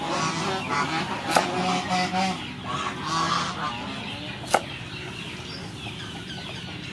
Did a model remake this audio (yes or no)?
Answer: no